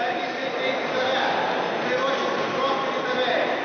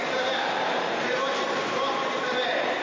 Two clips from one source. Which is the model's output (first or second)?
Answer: second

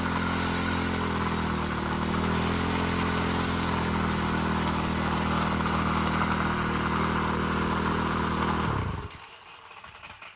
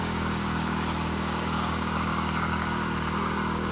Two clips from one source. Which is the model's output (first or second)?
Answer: second